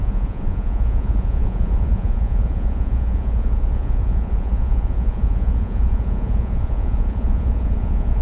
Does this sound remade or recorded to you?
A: remade